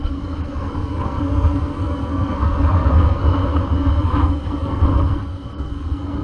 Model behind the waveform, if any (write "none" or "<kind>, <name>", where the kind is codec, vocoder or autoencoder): codec, SNAC